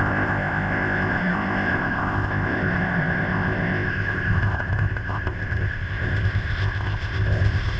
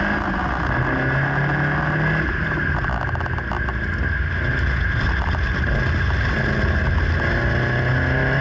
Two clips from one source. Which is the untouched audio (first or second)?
second